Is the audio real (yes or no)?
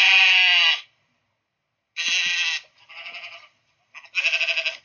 yes